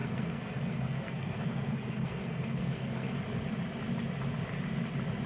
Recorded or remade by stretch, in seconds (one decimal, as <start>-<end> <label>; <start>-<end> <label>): 0.0-3.2 remade; 3.2-5.3 recorded